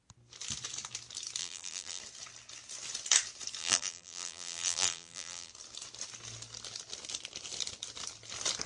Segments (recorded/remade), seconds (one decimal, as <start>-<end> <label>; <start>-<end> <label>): 0.0-1.4 recorded; 1.4-2.0 remade; 2.0-3.6 recorded; 3.6-5.5 remade; 5.5-8.7 recorded